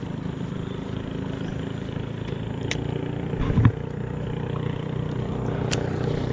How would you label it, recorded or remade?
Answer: recorded